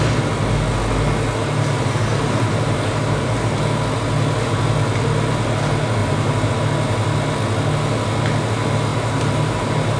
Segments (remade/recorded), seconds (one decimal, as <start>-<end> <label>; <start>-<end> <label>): 0.0-1.4 recorded; 1.4-3.6 remade; 3.6-6.0 recorded; 6.0-6.5 remade; 6.5-8.9 recorded; 8.9-10.0 remade